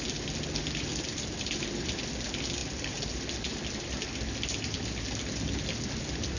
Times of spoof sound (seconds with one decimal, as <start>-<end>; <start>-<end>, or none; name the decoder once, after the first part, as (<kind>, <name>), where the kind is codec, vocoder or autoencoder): none